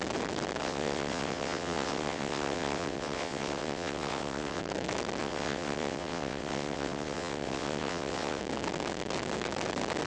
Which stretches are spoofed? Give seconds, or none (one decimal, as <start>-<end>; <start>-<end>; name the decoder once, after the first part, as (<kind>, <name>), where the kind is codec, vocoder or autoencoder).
0.6-4.6 (vocoder, WaveNeXt); 5.2-8.4